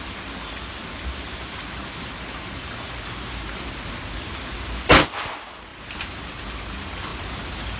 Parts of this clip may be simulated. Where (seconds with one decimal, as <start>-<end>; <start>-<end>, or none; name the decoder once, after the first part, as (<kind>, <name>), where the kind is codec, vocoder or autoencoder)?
1.3-3.0 (vocoder, BigVGAN v2); 5.7-6.3